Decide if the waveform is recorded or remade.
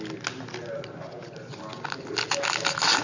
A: recorded